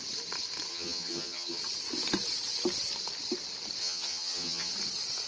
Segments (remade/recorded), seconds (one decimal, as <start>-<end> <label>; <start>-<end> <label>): 0.0-0.7 recorded; 0.7-1.6 remade; 1.6-3.8 recorded; 3.8-4.7 remade; 4.7-5.3 recorded